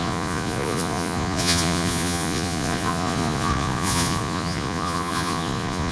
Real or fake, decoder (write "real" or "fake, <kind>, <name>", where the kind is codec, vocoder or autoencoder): fake, vocoder, Vocos